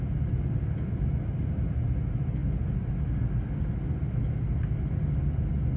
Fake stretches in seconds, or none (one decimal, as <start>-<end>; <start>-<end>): none